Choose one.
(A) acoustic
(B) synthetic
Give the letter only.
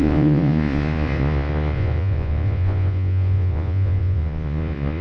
B